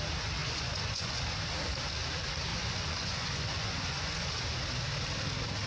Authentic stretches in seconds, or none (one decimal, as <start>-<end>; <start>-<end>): 0.0-0.4; 1.2-2.5; 4.2-5.7